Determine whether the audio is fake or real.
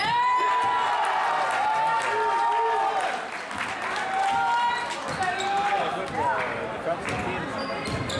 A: real